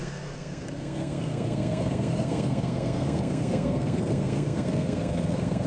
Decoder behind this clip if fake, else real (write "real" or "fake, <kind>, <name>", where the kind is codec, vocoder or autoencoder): fake, codec, SNAC